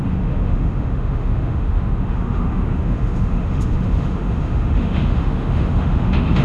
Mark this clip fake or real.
fake